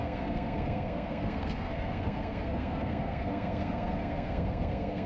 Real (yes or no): no